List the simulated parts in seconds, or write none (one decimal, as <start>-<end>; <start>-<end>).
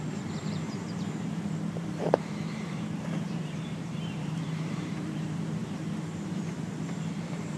0.0-7.6